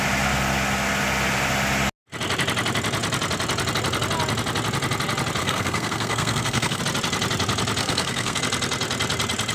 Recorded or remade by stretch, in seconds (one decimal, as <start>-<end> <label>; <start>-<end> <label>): 0.0-5.4 recorded; 5.4-6.8 remade; 6.8-7.8 recorded; 7.8-8.4 remade; 8.4-9.5 recorded